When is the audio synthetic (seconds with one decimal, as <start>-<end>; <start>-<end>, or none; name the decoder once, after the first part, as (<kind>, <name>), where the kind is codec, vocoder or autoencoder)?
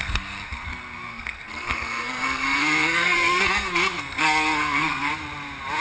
0.0-5.1 (codec, SNAC)